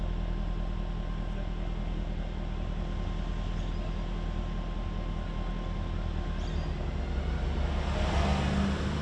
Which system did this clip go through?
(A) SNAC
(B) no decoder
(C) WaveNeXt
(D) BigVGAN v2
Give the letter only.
B